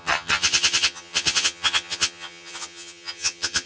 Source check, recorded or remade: remade